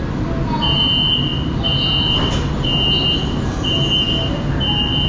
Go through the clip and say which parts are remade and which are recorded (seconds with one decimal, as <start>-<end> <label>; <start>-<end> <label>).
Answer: 0.0-5.1 recorded